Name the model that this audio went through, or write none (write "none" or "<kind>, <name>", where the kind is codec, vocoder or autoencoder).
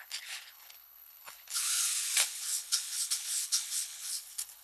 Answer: codec, HILCodec